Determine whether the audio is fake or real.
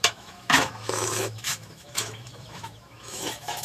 fake